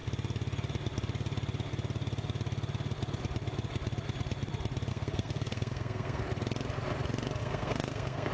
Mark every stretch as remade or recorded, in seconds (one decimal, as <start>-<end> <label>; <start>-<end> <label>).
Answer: 0.0-4.9 recorded; 4.9-6.2 remade; 6.2-7.4 recorded; 7.4-8.3 remade